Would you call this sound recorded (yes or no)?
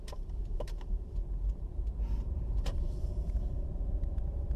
no